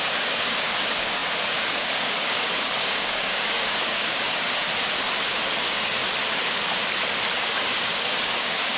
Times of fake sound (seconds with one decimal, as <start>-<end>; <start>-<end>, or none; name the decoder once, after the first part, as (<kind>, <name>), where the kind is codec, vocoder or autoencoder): 0.0-4.6 (codec, DAC); 5.6-6.0; 7.4-8.8